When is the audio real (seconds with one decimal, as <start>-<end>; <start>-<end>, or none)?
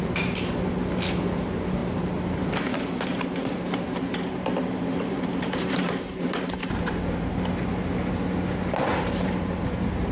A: 0.0-4.1; 7.5-8.9; 9.6-10.1